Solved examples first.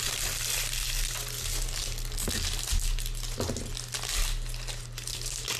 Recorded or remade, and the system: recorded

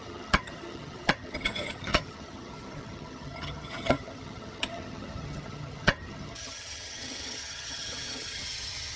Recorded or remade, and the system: remade, vocoder, HiFi-GAN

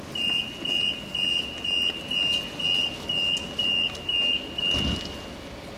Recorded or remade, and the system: recorded